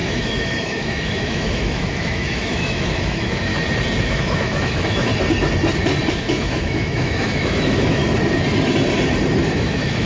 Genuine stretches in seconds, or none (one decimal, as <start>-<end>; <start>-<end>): 3.5-4.0; 5.1-6.1; 8.0-9.5